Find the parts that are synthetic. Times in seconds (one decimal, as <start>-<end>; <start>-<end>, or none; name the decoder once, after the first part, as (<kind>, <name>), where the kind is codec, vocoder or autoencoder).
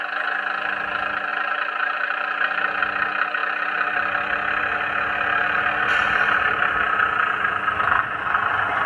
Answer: 1.3-2.8 (vocoder, BigVGAN v2)